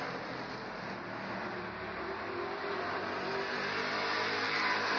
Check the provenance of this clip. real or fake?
real